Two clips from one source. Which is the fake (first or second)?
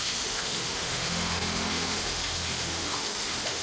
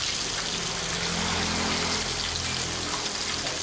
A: first